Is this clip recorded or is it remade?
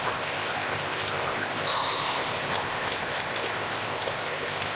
remade